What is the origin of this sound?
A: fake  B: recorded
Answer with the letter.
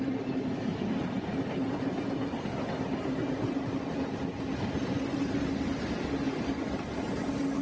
B